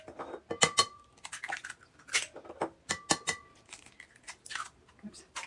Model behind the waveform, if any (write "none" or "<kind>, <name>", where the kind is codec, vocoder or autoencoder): none